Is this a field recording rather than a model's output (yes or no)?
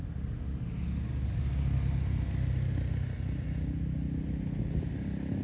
yes